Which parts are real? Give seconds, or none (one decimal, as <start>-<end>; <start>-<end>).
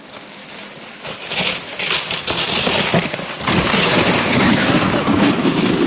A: 0.4-3.9